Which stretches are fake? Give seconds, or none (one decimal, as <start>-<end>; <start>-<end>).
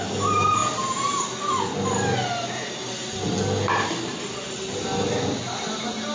none